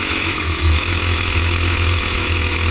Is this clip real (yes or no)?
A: no